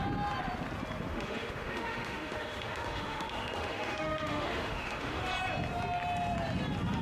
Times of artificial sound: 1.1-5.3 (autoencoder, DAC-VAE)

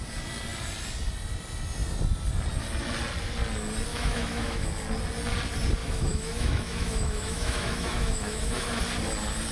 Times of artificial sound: 3.9-4.7 (autoencoder, DAC-VAE); 5.8-8.8

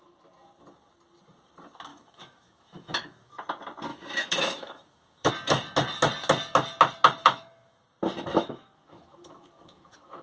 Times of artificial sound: 1.9-3.3 (autoencoder, DAC-VAE); 3.9-5.3; 7.2-7.8; 8.3-10.2

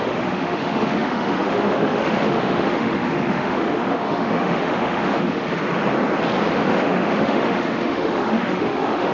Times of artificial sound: 0.0-5.6 (autoencoder, DAC-VAE); 6.5-9.1

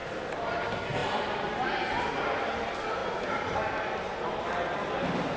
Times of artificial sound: none

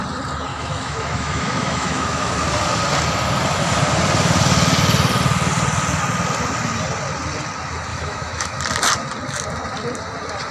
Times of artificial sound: 0.5-2.3 (autoencoder, DAC-VAE); 7.9-8.6

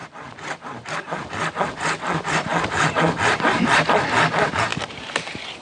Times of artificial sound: none